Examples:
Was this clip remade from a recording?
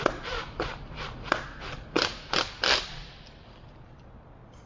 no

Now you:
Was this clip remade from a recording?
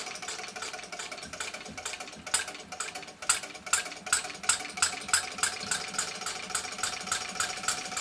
no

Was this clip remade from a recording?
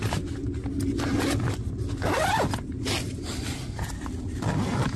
no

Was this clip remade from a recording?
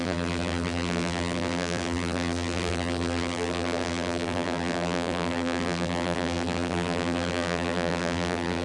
yes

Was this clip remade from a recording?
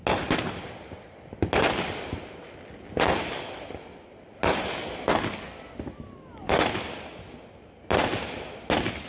no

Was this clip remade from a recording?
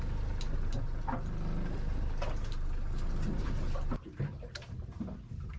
no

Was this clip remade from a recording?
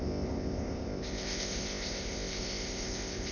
yes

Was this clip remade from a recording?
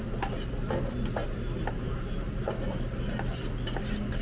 no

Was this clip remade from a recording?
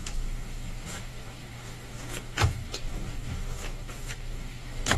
yes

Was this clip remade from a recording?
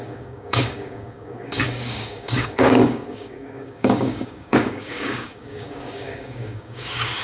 yes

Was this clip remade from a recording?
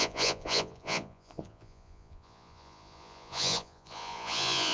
yes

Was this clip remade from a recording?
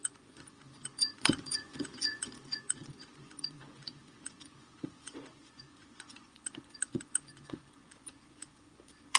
yes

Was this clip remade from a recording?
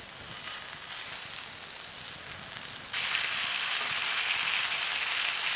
no